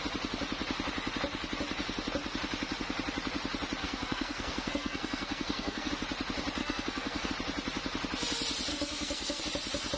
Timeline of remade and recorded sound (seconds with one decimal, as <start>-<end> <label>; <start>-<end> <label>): 0.0-3.8 recorded; 3.8-5.9 remade; 5.9-6.6 recorded; 6.6-7.3 remade; 7.3-8.7 recorded; 8.7-9.4 remade; 9.4-10.0 recorded